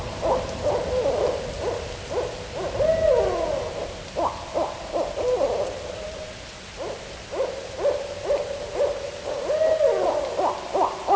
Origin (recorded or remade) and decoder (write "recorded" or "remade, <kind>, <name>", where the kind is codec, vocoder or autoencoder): recorded